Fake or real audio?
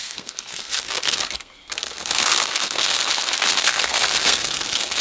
fake